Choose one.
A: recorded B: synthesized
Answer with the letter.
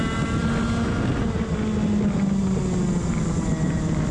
A